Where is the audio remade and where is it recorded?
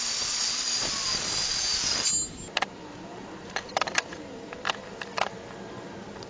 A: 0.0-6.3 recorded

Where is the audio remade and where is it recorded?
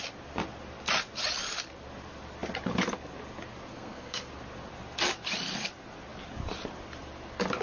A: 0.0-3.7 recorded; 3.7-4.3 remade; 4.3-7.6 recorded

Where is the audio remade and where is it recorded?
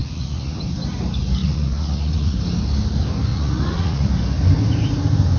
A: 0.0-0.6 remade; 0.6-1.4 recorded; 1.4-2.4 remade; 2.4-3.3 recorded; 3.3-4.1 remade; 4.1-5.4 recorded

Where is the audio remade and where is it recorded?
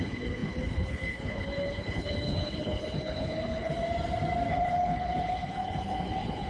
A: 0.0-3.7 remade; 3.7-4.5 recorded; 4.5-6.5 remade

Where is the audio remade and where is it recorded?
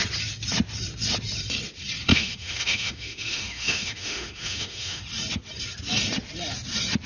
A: 0.0-2.1 recorded; 2.1-5.0 remade; 5.0-7.1 recorded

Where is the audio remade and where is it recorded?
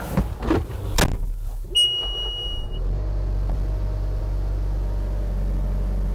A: 0.0-6.1 recorded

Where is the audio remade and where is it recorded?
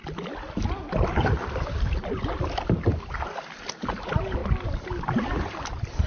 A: 0.0-6.1 recorded